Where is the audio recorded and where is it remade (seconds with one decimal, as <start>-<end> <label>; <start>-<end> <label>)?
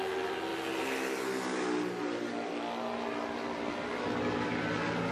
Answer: 0.0-5.1 recorded